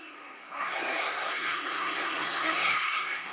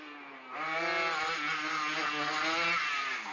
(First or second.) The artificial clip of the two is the first